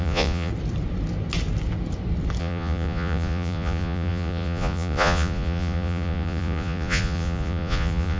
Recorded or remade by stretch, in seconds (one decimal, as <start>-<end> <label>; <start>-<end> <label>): 0.0-0.5 remade; 0.5-2.4 recorded; 2.4-8.2 remade